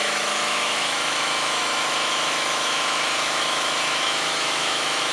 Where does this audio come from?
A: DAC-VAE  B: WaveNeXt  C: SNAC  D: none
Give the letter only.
A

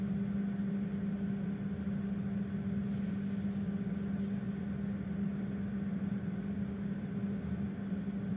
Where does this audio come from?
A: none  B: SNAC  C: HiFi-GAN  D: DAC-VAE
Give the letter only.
A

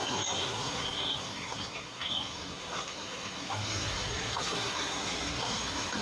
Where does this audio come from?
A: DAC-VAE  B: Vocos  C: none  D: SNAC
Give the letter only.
D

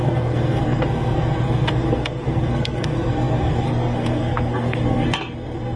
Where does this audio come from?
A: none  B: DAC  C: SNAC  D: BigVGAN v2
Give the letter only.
C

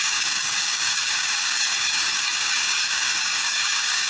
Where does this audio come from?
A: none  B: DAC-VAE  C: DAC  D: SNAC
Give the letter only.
C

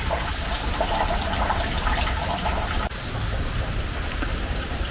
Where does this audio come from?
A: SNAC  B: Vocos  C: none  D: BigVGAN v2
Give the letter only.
C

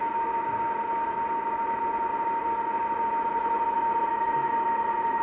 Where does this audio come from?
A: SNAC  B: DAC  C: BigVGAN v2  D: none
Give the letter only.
D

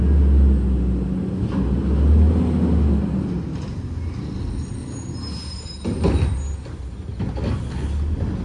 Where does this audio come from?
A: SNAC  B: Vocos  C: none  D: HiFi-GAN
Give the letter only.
C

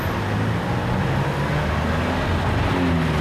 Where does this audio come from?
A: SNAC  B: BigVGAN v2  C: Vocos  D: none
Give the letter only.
D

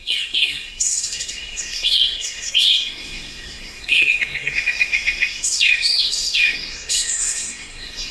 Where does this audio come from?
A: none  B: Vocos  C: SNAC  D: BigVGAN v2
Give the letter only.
C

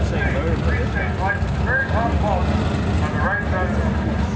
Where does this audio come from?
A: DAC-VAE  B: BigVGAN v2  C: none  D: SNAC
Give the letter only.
C